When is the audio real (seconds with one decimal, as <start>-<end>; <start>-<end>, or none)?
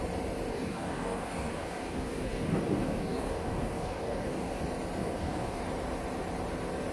0.0-0.5; 4.6-5.0; 5.6-6.9